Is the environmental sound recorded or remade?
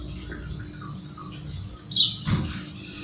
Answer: recorded